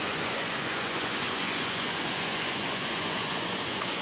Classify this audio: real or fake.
fake